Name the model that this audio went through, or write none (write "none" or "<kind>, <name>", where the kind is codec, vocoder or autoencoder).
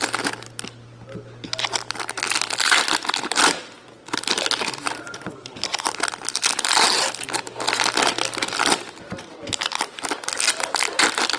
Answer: none